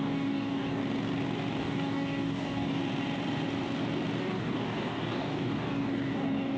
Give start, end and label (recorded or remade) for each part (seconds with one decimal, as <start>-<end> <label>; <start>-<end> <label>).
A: 0.0-0.8 remade; 0.8-1.6 recorded; 1.6-2.8 remade; 2.8-4.2 recorded; 4.2-6.6 remade